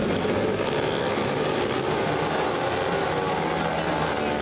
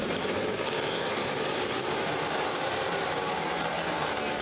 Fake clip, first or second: second